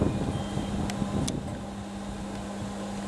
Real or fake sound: real